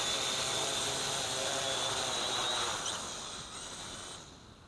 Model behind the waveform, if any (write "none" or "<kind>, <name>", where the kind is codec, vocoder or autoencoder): none